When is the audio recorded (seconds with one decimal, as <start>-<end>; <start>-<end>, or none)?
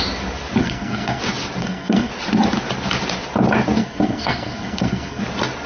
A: 0.0-0.6; 1.2-1.6; 2.1-3.8; 5.2-5.7